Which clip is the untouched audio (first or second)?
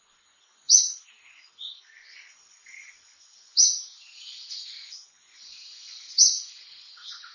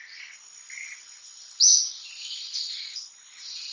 second